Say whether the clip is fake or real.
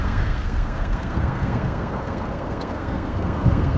fake